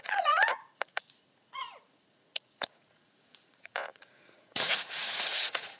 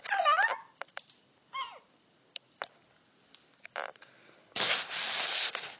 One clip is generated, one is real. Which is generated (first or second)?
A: first